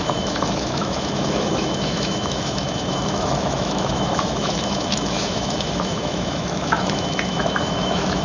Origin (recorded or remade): remade